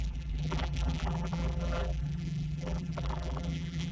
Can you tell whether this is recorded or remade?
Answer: remade